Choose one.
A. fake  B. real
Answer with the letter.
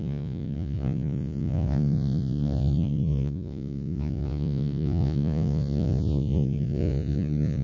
A